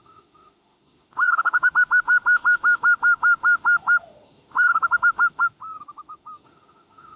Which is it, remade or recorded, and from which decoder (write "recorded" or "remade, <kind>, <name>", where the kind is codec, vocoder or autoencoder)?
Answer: remade, autoencoder, DAC-VAE